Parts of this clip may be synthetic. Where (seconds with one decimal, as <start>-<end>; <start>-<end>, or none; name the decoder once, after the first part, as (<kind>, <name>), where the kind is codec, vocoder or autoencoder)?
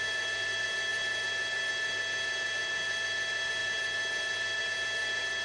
none